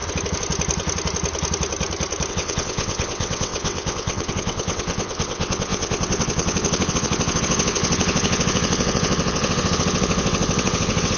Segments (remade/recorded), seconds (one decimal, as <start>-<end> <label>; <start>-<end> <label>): 0.0-2.3 recorded; 2.3-11.2 remade